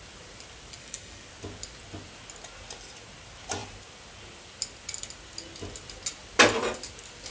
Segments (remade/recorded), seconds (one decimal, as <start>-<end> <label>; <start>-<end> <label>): 0.0-0.8 recorded; 0.8-1.3 remade; 1.3-7.3 recorded